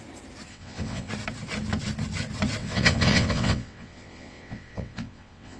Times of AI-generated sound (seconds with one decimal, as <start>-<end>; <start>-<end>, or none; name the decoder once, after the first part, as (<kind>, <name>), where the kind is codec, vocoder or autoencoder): 0.5-1.1 (vocoder, WaveNeXt); 2.6-5.6